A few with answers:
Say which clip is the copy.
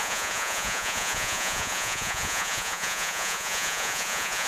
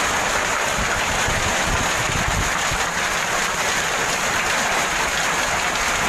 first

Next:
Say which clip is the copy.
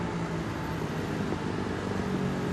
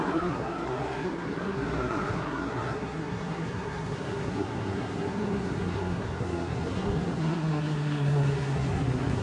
second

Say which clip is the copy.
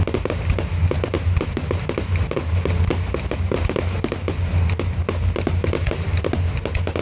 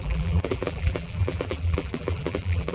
second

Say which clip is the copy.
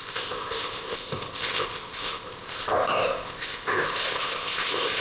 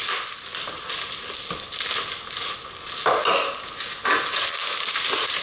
first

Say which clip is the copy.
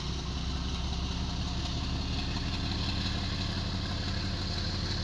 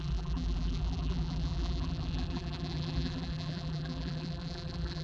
second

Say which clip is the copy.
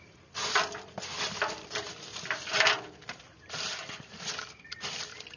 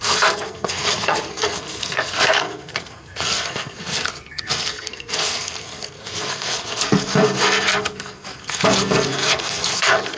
second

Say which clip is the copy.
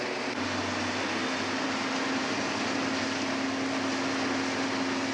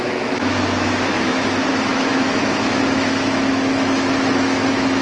second